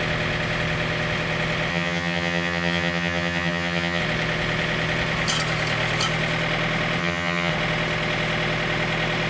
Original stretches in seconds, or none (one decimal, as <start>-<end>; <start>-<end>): 0.0-1.7; 4.0-7.0; 7.5-9.3